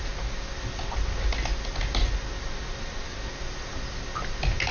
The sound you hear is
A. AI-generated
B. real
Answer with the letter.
B